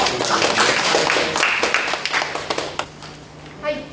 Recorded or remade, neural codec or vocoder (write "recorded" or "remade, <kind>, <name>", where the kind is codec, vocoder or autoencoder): recorded